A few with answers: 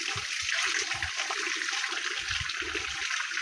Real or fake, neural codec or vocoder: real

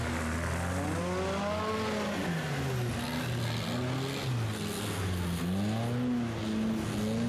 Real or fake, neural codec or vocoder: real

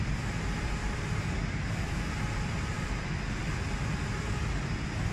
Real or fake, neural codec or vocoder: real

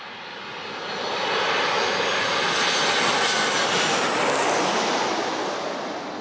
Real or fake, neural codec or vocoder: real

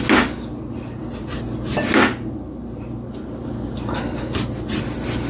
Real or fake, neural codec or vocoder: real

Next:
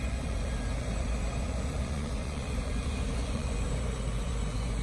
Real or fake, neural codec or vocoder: fake, vocoder, Vocos